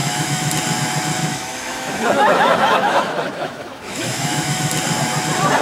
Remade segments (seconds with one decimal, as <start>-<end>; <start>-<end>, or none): 0.0-0.5; 1.3-4.7